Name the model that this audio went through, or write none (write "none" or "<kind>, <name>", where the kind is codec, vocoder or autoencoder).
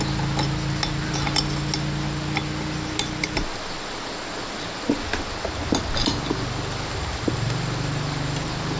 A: none